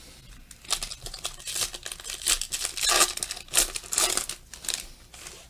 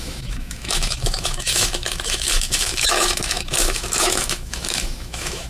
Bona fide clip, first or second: first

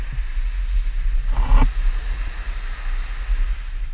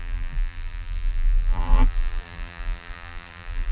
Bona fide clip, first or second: first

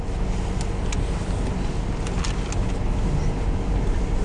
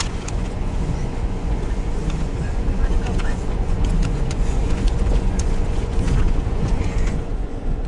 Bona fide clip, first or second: first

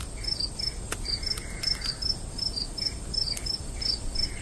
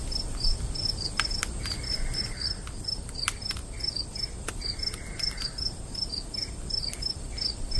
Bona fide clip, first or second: first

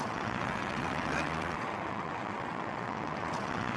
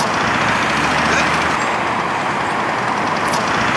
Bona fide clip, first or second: second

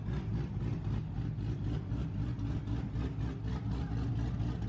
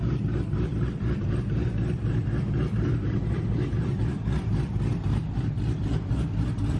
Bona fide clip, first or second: first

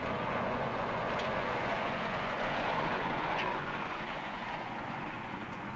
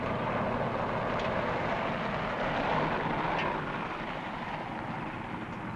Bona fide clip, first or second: second